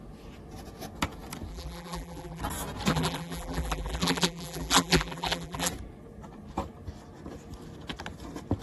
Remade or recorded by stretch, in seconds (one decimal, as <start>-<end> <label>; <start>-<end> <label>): 0.0-1.5 recorded; 1.5-2.4 remade; 2.4-2.9 recorded; 2.9-5.7 remade; 5.7-8.6 recorded